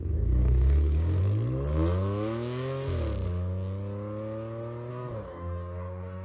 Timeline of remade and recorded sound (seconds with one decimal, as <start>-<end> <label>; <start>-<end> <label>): 0.0-1.2 remade; 1.2-4.9 recorded; 4.9-6.2 remade